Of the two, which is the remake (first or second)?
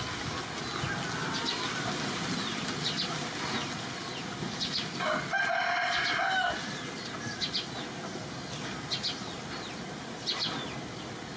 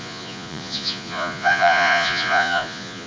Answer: second